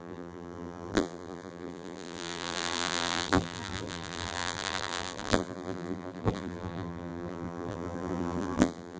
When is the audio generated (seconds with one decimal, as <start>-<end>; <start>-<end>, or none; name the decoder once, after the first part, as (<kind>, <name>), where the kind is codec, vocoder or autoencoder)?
0.0-9.0 (vocoder, BigVGAN v2)